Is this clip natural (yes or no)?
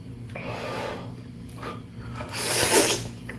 no